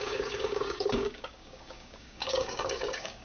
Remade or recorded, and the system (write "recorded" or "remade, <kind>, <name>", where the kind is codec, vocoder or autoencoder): remade, codec, DAC